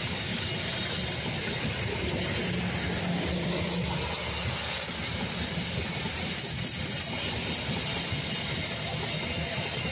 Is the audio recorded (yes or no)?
yes